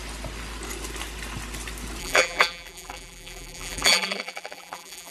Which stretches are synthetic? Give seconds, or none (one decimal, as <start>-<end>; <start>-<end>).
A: 2.0-5.1